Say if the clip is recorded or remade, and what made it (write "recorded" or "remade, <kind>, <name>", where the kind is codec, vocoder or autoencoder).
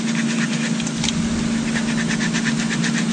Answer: recorded